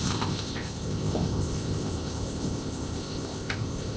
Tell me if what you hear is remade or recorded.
remade